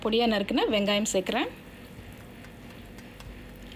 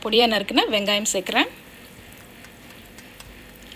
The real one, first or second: first